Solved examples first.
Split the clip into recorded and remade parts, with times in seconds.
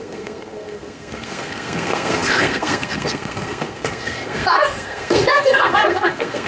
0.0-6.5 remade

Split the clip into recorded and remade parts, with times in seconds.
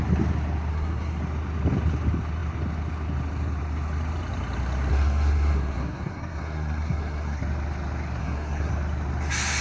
0.0-0.7 recorded; 0.7-1.2 remade; 1.2-4.9 recorded; 4.9-7.4 remade; 7.4-8.2 recorded; 8.2-8.7 remade; 8.7-9.6 recorded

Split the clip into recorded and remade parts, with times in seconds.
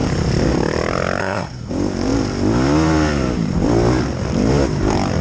0.0-1.2 recorded; 1.2-1.7 remade; 1.7-5.2 recorded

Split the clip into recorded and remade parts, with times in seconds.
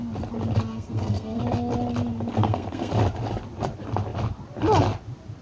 0.0-0.7 recorded; 0.7-1.4 remade; 1.4-2.3 recorded; 2.3-2.9 remade; 2.9-5.4 recorded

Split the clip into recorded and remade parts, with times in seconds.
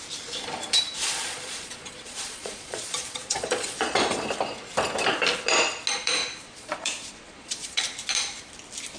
0.0-1.0 recorded; 1.0-4.2 remade; 4.2-6.2 recorded; 6.2-7.8 remade; 7.8-9.0 recorded